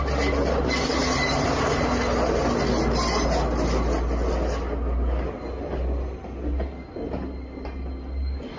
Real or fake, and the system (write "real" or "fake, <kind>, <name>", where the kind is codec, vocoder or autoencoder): real